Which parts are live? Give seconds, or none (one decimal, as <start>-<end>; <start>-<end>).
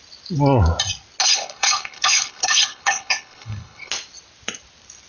0.0-1.2; 3.9-5.1